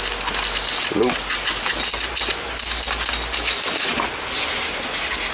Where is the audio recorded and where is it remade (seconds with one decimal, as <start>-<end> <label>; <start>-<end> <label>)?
0.0-5.3 recorded